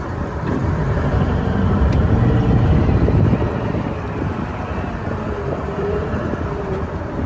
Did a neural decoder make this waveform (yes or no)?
yes